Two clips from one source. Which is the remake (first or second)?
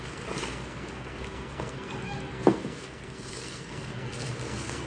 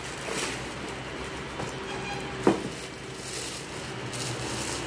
first